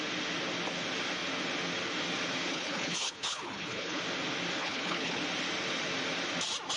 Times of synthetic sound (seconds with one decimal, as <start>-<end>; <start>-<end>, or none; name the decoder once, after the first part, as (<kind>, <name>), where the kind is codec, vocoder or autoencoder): 2.5-4.0 (codec, HILCodec); 4.6-5.2